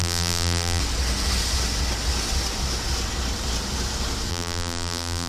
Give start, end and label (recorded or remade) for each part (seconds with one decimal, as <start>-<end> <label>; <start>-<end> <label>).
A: 0.0-0.8 remade; 0.8-4.3 recorded; 4.3-5.3 remade